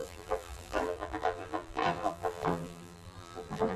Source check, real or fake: fake